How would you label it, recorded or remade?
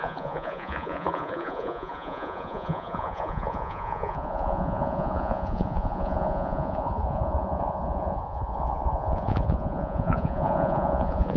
remade